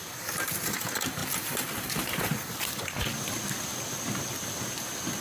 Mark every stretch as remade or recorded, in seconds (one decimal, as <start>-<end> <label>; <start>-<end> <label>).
0.0-5.2 recorded